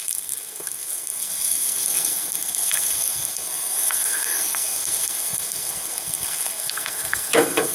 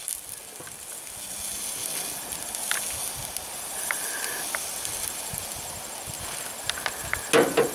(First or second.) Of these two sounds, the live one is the second